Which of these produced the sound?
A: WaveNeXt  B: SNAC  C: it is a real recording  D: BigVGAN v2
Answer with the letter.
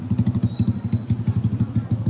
C